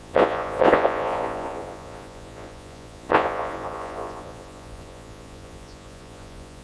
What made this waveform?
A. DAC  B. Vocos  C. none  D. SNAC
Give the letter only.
B